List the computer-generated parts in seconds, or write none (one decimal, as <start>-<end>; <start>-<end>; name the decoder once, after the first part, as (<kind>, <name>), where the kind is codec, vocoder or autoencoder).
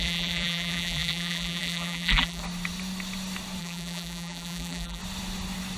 0.0-2.4 (vocoder, BigVGAN v2); 3.6-5.0